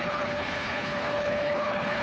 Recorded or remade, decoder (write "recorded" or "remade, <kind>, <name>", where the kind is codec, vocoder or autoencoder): remade, codec, HILCodec